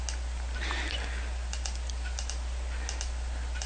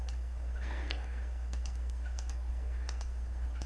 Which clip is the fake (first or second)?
second